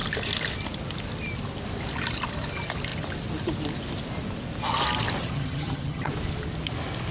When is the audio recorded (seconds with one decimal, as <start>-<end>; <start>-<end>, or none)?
0.0-5.2; 6.1-7.1